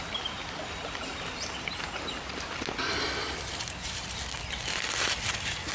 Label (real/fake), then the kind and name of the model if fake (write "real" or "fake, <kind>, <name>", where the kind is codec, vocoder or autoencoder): real